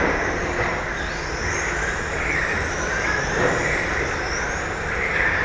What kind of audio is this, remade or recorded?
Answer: recorded